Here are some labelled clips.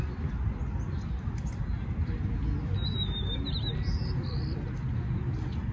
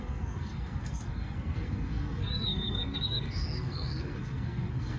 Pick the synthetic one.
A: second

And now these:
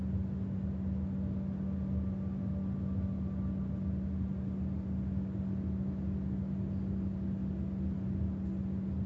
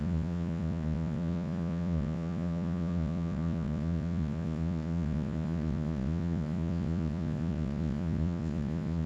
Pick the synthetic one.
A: second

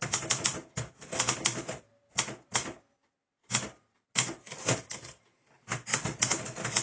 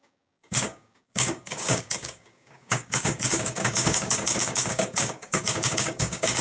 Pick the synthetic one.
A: second